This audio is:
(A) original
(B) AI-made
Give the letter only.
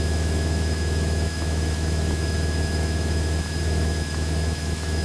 B